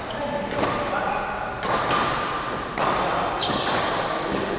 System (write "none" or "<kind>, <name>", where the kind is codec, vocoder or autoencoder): none